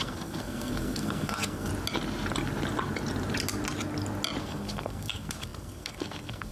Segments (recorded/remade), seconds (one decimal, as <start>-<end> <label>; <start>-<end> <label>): 0.0-1.7 remade; 1.7-4.4 recorded; 4.4-6.5 remade